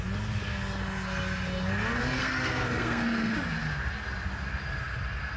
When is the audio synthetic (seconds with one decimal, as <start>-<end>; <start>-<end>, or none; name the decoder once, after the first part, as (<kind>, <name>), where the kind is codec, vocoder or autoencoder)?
2.2-3.3 (codec, SNAC)